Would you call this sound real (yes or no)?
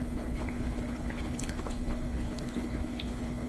no